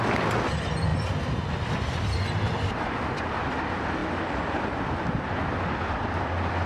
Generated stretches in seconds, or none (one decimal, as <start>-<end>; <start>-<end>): none